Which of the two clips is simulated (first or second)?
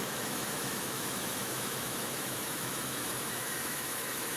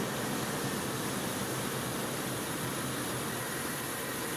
first